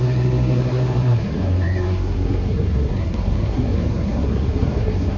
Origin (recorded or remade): remade